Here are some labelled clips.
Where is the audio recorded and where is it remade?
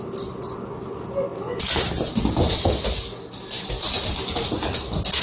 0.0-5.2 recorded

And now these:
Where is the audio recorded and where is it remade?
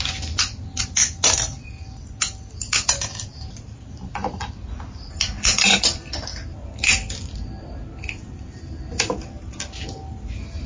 0.0-10.7 remade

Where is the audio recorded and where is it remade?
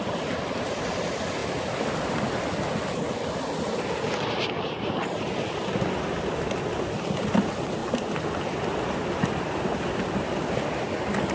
0.0-11.3 recorded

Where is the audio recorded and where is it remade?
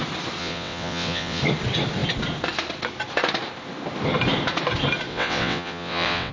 0.0-0.4 recorded; 0.4-1.4 remade; 1.4-5.1 recorded; 5.1-6.3 remade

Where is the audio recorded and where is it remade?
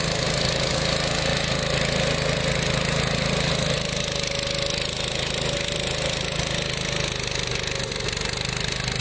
0.0-9.0 recorded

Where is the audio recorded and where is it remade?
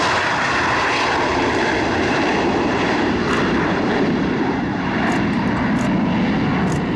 0.0-1.3 recorded; 1.3-5.5 remade; 5.5-7.0 recorded